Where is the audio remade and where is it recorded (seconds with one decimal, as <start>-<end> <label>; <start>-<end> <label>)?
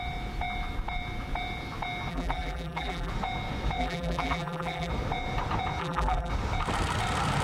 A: 0.0-2.1 recorded; 2.1-3.1 remade; 3.1-3.8 recorded; 3.8-4.9 remade; 4.9-5.8 recorded; 5.8-6.3 remade; 6.3-7.4 recorded